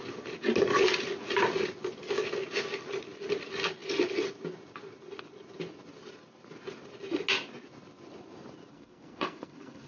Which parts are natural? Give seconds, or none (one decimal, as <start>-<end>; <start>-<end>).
0.0-8.7